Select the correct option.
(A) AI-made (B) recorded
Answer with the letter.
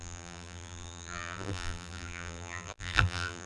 A